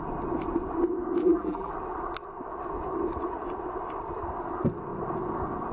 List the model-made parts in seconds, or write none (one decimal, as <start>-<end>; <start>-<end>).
1.2-1.7